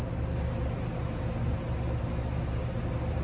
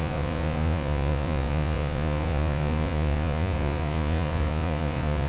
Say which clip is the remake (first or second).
second